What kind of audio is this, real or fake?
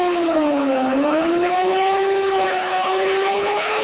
fake